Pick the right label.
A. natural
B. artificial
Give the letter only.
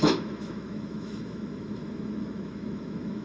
B